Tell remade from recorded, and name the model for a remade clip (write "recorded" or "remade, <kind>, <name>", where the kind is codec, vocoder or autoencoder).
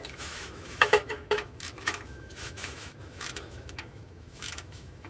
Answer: remade, autoencoder, DAC-VAE